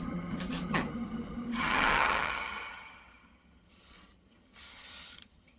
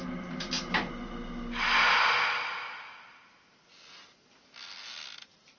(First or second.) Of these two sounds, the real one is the second